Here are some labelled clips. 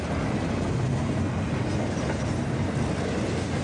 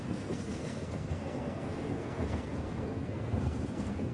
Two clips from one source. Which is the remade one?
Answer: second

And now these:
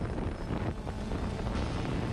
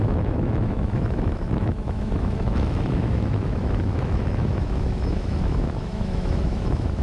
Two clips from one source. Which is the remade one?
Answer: second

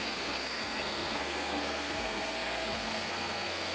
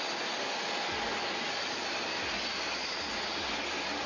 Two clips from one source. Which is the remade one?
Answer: first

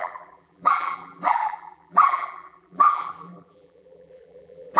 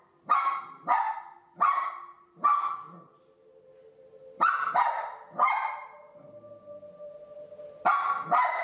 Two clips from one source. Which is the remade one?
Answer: first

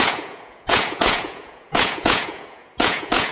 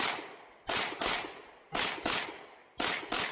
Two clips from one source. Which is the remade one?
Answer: first